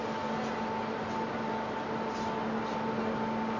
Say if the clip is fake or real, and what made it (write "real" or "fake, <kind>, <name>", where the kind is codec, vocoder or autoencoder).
real